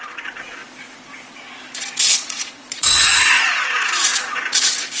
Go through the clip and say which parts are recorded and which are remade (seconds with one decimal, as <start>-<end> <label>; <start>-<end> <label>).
0.0-5.0 remade

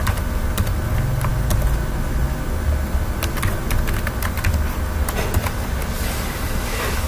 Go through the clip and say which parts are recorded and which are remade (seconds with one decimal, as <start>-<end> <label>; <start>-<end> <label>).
0.0-7.1 recorded

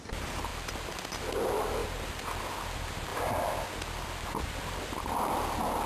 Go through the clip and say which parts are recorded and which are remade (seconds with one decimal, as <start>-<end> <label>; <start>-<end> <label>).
0.0-1.8 recorded; 1.8-2.4 remade; 2.4-5.9 recorded

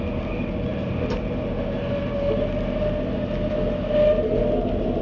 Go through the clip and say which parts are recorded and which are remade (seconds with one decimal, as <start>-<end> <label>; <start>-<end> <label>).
0.0-5.0 recorded

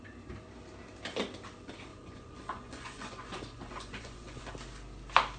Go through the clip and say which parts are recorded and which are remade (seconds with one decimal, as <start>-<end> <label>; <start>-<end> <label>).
0.0-1.9 recorded; 1.9-4.5 remade; 4.5-5.4 recorded

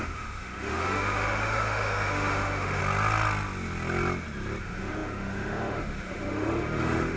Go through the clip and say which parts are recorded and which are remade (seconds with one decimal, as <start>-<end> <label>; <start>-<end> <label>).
0.0-2.8 remade; 2.8-4.6 recorded; 4.6-7.2 remade

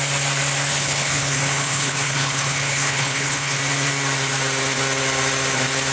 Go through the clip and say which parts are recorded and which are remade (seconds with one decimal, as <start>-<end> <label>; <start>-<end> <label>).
0.0-0.7 recorded; 0.7-3.6 remade; 3.6-5.9 recorded